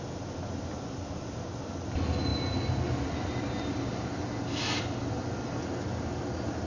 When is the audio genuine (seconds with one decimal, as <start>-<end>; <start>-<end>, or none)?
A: 0.0-6.7